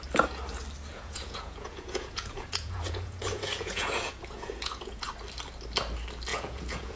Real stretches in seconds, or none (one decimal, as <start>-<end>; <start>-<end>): 0.0-0.9; 5.1-6.3